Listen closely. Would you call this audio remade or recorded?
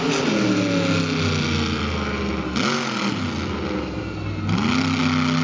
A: recorded